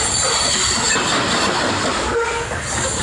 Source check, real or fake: real